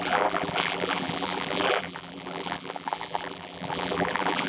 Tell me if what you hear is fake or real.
fake